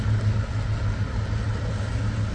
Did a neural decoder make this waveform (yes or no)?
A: no